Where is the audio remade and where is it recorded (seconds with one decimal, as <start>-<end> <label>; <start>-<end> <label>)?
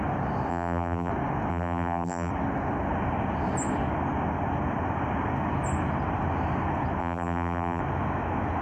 0.0-0.5 recorded; 0.5-1.1 remade; 1.1-1.5 recorded; 1.5-2.3 remade; 2.3-7.0 recorded; 7.0-7.8 remade; 7.8-8.6 recorded